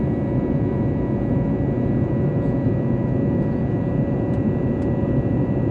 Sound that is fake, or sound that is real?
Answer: fake